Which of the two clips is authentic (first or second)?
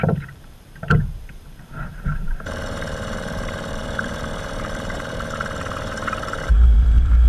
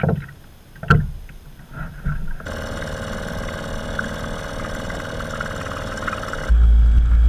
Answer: second